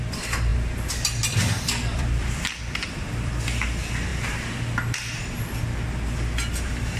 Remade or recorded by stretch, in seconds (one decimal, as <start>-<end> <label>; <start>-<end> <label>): 0.0-4.1 remade; 4.1-6.6 recorded; 6.6-7.0 remade